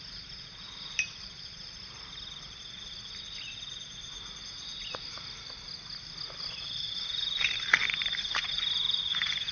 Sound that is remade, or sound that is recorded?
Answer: recorded